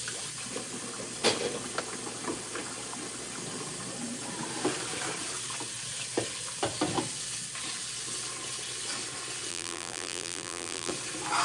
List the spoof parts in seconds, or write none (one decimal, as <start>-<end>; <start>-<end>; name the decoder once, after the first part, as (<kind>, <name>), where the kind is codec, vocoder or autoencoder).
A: 9.5-10.9 (vocoder, BigVGAN v2)